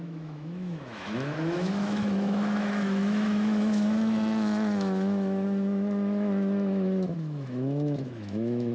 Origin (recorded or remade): remade